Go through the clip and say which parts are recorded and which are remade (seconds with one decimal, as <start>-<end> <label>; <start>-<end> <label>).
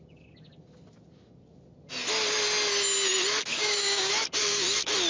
0.0-3.5 recorded; 3.5-4.1 remade; 4.1-5.1 recorded